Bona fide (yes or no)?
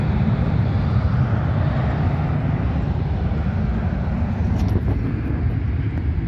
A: yes